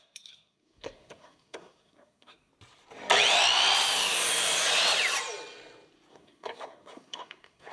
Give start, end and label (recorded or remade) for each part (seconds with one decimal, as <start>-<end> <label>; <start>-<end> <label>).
0.0-2.5 remade; 2.5-6.1 recorded; 6.1-7.7 remade